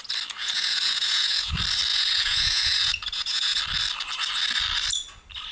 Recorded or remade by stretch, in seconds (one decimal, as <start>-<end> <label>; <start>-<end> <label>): 0.0-0.4 recorded; 0.4-1.5 remade; 1.5-1.9 recorded; 1.9-3.6 remade; 3.6-5.5 recorded